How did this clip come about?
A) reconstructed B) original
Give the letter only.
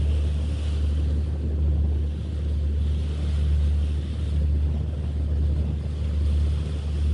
B